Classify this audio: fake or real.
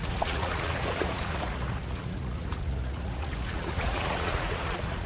fake